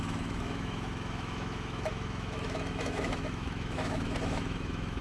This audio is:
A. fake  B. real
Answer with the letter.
A